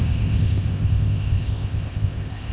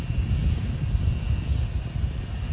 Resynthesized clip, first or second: first